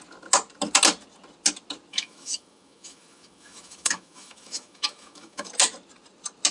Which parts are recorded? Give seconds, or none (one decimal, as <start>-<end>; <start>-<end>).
0.0-1.9; 5.5-6.5